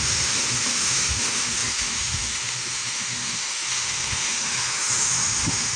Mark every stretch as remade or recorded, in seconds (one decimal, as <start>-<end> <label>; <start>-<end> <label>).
0.0-5.8 remade